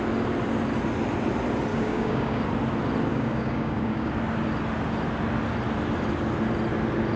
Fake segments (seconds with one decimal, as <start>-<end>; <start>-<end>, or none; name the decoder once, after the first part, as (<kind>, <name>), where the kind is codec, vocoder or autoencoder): 1.7-2.4 (codec, DAC); 3.1-4.1